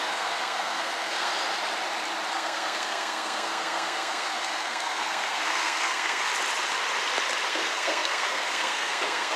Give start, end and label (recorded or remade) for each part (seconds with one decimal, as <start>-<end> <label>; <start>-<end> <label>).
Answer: 0.0-1.3 remade; 1.3-2.3 recorded; 2.3-6.3 remade; 6.3-7.5 recorded; 7.5-9.4 remade